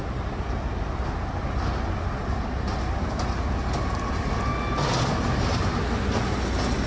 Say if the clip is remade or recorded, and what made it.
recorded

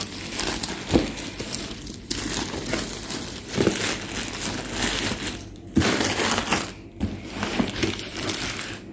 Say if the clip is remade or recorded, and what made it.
recorded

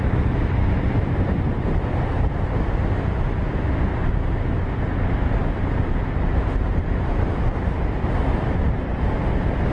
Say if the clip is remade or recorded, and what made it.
recorded